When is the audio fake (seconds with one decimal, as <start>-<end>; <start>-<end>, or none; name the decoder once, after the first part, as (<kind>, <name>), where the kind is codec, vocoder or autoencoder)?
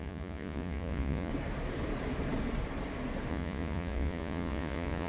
0.0-1.3 (vocoder, Vocos); 3.3-5.1